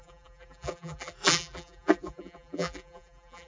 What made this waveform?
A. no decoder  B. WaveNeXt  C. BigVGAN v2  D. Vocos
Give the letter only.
C